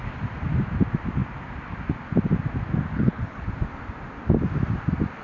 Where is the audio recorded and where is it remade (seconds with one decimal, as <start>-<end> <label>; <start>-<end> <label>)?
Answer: 0.0-2.9 recorded; 2.9-3.5 remade; 3.5-5.2 recorded